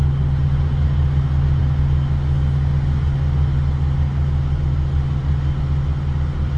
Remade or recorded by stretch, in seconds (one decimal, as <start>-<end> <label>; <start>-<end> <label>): 0.0-6.6 recorded